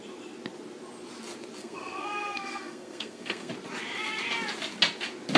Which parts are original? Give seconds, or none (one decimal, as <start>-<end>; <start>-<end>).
0.0-1.6; 3.5-5.4